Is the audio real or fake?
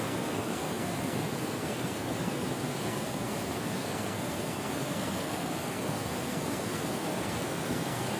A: fake